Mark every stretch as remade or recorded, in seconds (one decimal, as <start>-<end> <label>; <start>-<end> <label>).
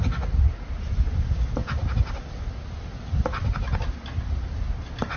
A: 0.0-5.2 recorded